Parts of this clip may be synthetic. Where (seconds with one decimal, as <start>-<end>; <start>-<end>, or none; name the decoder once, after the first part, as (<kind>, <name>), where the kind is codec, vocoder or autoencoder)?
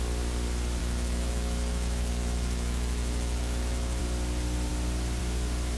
0.8-4.0 (autoencoder, DAC-VAE)